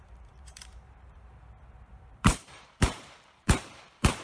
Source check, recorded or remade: remade